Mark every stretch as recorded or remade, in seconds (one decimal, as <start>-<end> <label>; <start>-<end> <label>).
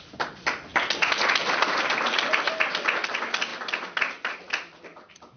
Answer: 0.0-5.4 recorded